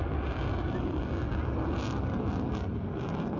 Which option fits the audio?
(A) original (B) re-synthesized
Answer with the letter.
A